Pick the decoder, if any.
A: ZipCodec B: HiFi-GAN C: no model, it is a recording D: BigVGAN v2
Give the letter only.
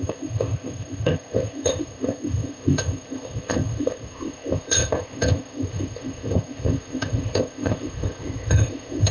A